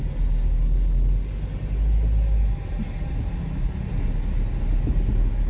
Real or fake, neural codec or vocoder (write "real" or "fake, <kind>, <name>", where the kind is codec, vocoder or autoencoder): real